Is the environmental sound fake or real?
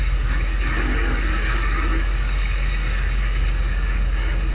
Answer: fake